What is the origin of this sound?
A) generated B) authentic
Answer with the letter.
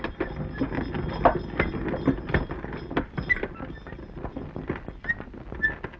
B